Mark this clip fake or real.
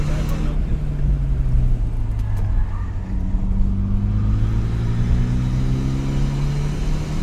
real